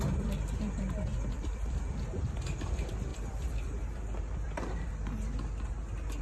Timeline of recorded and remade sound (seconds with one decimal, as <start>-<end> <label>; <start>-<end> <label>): 0.0-1.1 recorded; 1.1-2.3 remade; 2.3-3.1 recorded; 3.1-4.9 remade; 4.9-6.2 recorded

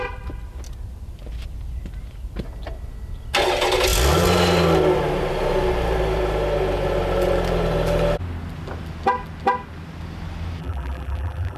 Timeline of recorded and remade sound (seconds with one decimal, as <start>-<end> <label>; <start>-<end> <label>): 0.0-10.6 recorded; 10.6-11.6 remade